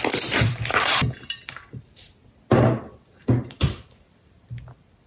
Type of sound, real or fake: fake